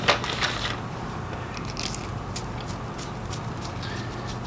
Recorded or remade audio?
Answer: recorded